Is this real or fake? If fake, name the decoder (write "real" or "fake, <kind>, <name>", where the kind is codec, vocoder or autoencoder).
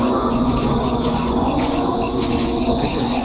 fake, vocoder, Vocos